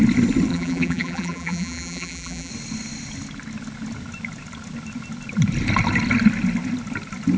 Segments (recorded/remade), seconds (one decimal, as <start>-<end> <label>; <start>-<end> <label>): 0.0-0.5 recorded; 0.5-2.5 remade; 2.5-7.4 recorded